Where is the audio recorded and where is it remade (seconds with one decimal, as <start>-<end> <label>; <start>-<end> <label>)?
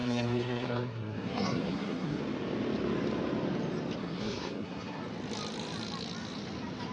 0.0-2.2 remade; 2.2-4.0 recorded; 4.0-5.0 remade; 5.0-6.9 recorded